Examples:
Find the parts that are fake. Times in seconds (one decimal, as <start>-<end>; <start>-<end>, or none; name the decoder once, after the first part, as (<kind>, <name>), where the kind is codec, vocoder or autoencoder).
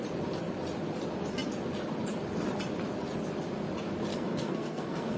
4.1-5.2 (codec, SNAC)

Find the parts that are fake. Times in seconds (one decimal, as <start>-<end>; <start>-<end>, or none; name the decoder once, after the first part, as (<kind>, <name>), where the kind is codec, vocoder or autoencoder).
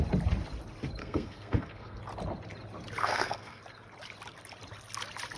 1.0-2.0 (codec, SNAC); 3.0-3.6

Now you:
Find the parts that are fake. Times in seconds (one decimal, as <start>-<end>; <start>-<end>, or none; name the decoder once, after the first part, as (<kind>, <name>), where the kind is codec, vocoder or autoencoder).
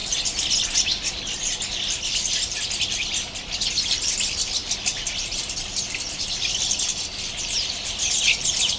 none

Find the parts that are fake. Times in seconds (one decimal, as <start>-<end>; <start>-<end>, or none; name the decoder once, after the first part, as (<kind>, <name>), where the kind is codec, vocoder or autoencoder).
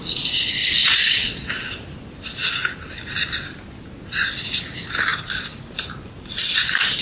0.8-1.5 (vocoder, WaveNeXt)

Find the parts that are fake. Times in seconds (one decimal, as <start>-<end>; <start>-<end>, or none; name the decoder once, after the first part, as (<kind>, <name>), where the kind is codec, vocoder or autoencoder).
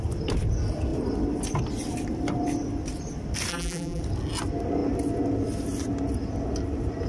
3.5-4.0 (vocoder, BigVGAN v2)